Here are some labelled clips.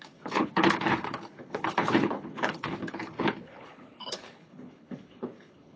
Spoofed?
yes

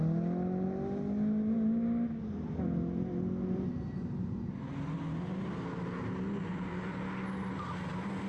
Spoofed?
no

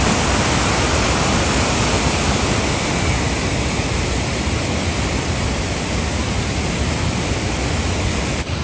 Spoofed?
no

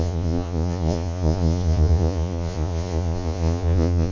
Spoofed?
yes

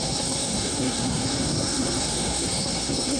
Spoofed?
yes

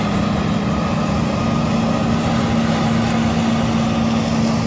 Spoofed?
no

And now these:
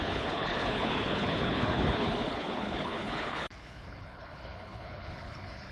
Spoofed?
yes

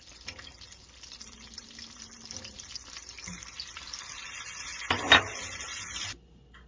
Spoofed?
no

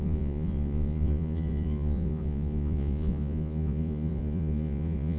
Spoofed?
yes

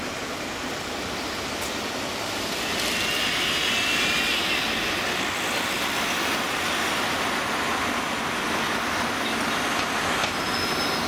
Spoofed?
no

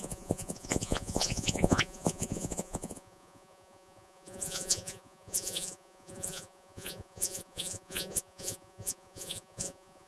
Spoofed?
yes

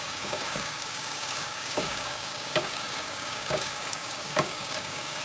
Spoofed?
yes